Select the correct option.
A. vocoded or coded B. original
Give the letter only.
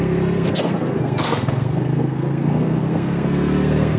A